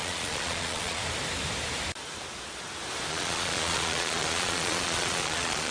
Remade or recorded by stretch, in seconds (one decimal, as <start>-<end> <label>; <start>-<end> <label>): 0.0-1.0 remade; 1.0-3.1 recorded; 3.1-5.7 remade